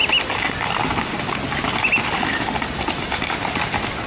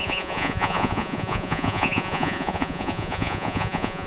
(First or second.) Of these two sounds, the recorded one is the first